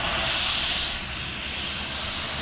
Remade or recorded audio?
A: recorded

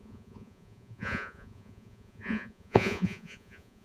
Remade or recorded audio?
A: remade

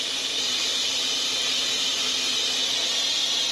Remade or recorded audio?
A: remade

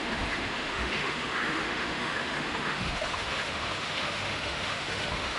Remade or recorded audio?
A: remade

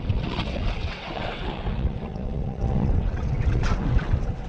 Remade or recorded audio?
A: remade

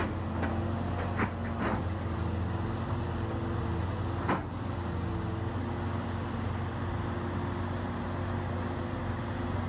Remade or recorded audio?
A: recorded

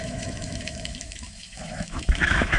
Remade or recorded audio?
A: remade